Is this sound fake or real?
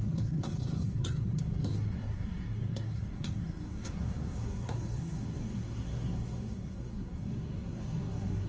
fake